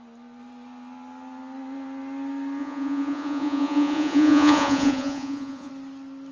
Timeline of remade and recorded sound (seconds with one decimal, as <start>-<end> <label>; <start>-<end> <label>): 0.0-2.6 recorded; 2.6-5.7 remade; 5.7-6.3 recorded